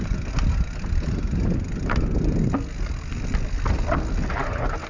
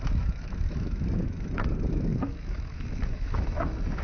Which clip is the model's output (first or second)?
second